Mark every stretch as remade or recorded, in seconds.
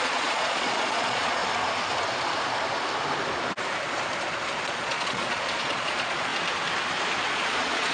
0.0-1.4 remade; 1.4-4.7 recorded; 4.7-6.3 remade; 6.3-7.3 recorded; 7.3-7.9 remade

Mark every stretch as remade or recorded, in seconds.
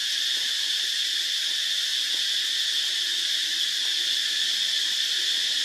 0.0-5.6 recorded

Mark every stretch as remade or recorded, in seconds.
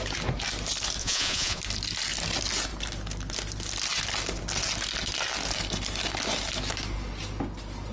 0.0-1.0 recorded; 1.0-1.6 remade; 1.6-7.9 recorded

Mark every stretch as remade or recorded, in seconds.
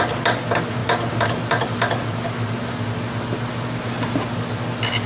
0.0-5.1 recorded